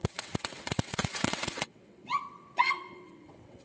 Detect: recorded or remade remade